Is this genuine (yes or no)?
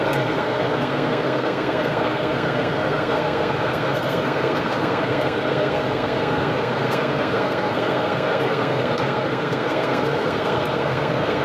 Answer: no